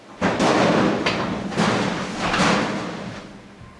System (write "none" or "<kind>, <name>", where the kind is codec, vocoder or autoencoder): none